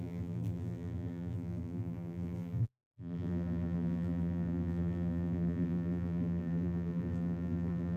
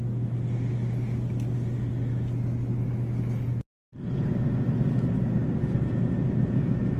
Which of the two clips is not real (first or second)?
first